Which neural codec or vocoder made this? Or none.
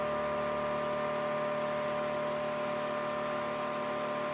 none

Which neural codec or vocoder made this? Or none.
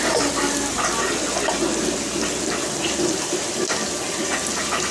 none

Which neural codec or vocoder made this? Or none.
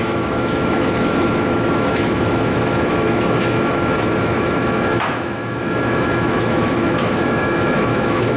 autoencoder, DAC-VAE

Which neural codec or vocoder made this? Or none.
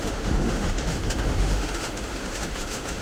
autoencoder, DAC-VAE